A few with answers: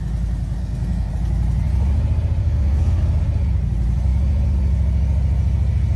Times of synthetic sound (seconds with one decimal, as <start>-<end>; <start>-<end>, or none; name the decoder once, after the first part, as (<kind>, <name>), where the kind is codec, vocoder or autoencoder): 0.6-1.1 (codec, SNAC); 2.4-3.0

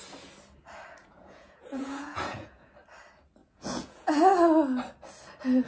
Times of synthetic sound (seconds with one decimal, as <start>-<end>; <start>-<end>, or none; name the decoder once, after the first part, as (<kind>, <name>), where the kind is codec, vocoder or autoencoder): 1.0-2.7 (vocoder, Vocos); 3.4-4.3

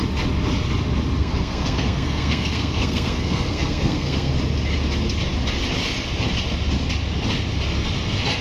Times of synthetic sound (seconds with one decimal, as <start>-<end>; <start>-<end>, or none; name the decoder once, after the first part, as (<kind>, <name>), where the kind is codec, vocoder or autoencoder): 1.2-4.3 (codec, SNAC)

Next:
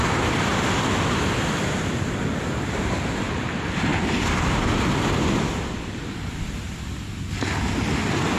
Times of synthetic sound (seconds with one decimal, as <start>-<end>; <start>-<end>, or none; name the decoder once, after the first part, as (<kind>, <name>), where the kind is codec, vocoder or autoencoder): 0.0-0.5 (vocoder, BigVGAN v2); 2.3-3.9

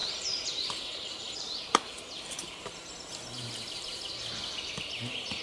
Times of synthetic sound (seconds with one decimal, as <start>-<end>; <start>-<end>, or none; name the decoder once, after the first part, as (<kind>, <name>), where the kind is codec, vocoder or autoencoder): 0.0-2.9 (vocoder, BigVGAN v2)

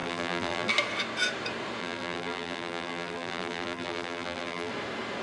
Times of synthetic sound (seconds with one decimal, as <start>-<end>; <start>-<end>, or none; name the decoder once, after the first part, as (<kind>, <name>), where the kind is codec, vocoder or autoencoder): 0.0-0.7 (vocoder, BigVGAN v2); 1.8-4.7